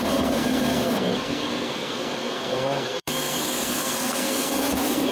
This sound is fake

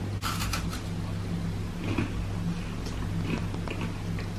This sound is real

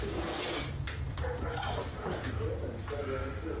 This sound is real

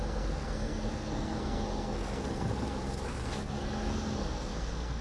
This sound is fake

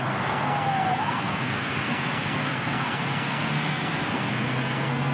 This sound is fake